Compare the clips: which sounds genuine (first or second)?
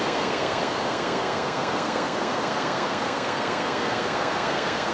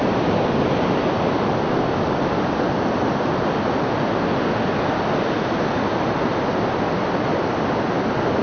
second